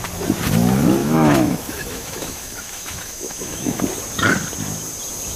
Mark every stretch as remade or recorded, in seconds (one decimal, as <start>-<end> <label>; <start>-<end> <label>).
0.0-1.0 recorded; 1.0-3.8 remade; 3.8-5.4 recorded